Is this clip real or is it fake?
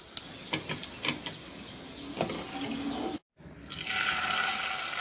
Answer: real